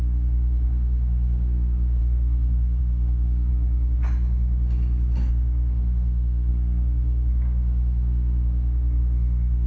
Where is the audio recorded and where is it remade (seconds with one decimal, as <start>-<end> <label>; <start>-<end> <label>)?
0.0-3.5 remade; 3.5-5.3 recorded; 5.3-9.7 remade